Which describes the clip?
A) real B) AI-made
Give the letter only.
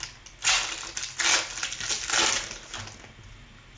A